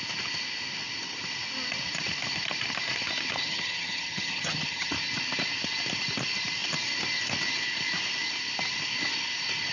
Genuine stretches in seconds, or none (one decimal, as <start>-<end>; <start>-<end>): 0.0-3.4; 4.9-9.7